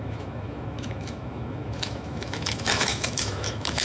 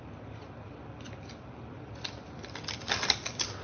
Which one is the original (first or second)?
second